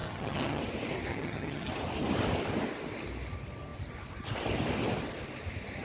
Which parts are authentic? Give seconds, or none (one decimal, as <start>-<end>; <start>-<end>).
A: 0.6-1.1; 1.7-5.8